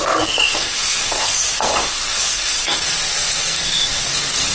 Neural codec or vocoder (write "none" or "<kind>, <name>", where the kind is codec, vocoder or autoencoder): codec, SNAC